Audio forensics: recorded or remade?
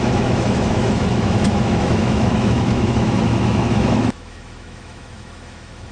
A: remade